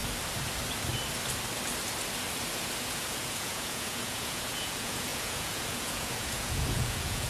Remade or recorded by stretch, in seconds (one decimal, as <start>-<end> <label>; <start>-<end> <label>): 0.0-2.8 recorded; 2.8-7.3 remade